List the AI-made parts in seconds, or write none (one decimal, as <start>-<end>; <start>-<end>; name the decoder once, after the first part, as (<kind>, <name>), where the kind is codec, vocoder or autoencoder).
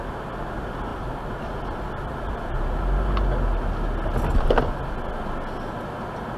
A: 0.9-1.9 (vocoder, BigVGAN v2)